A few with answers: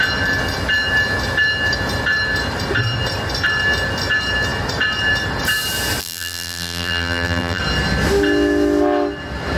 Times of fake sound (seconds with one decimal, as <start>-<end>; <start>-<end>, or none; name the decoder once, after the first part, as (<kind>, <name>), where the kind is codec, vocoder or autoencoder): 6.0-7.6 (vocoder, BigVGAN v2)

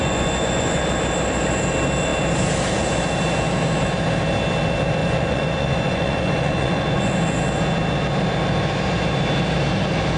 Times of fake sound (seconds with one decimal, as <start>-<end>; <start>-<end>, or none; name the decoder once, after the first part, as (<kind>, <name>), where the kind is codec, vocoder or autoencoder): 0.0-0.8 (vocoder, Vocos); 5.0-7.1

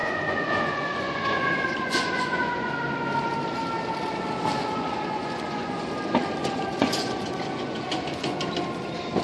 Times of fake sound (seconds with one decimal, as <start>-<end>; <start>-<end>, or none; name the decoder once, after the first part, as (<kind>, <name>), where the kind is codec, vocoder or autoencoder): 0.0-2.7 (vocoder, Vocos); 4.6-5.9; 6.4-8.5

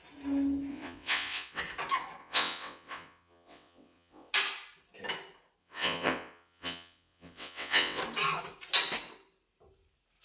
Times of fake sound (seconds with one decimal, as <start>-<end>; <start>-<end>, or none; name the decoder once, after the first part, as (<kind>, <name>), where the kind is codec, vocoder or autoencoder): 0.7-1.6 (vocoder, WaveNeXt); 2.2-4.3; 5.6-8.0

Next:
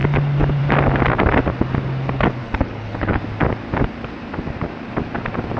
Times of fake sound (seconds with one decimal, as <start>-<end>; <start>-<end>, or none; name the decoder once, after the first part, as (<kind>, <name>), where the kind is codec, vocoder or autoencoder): 2.4-3.2 (codec, HILCodec)

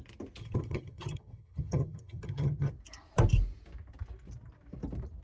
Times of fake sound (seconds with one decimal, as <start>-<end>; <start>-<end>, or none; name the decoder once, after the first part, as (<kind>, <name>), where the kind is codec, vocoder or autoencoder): 0.4-2.7 (vocoder, HiFi-GAN)

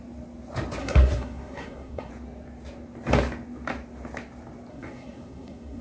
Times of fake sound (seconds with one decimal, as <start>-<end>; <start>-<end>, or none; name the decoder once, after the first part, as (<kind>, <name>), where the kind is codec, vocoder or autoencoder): 0.8-2.1 (codec, SNAC); 4.7-5.8

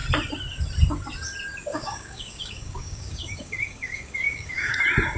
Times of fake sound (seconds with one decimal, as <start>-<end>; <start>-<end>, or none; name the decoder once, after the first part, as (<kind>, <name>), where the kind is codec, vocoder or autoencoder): 1.7-4.8 (codec, DAC)